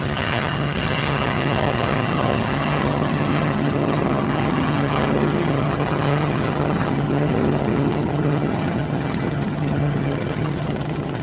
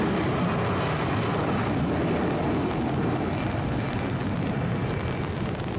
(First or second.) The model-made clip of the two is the first